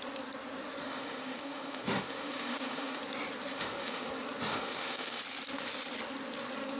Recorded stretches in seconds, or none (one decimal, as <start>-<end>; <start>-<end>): 0.0-0.9; 3.0-3.5; 4.1-4.5; 5.2-6.8

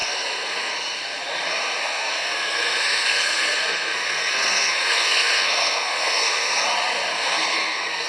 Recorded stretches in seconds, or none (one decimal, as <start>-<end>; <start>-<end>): 0.7-1.8; 6.6-7.1

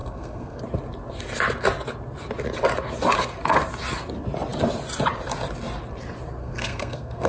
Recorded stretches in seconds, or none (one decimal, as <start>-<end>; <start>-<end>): 0.6-6.4